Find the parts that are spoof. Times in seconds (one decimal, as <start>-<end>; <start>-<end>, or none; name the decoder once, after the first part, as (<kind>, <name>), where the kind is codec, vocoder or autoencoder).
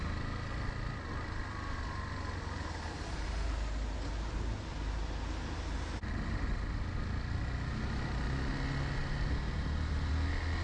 9.0-10.1 (vocoder, BigVGAN v2)